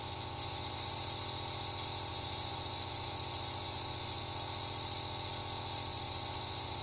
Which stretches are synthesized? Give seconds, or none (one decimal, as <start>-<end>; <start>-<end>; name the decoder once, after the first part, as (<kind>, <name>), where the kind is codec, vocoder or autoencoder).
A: 0.0-0.9 (vocoder, Vocos); 2.1-4.2; 5.9-6.8